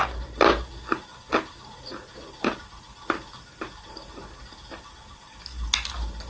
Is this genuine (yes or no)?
yes